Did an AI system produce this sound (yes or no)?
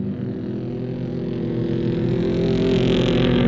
no